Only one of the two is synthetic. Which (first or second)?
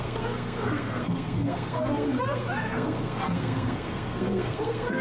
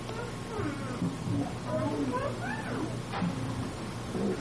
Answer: first